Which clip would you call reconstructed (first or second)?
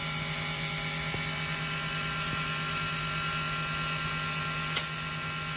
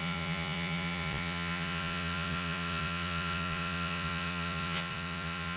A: second